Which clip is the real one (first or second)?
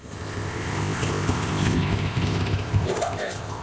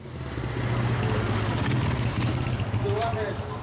second